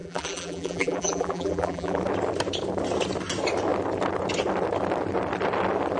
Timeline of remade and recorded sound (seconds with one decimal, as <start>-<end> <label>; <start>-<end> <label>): 0.0-2.0 remade; 2.0-6.0 recorded